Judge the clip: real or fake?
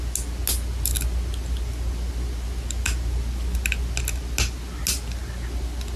real